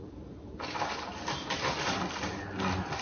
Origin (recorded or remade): recorded